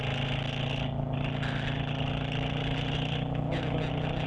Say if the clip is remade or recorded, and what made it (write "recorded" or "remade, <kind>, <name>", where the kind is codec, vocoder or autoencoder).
recorded